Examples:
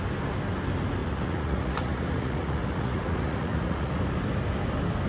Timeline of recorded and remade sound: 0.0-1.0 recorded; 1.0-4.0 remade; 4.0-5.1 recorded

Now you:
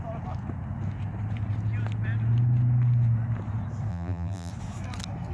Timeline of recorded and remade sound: 0.0-3.9 recorded; 3.9-4.5 remade; 4.5-5.3 recorded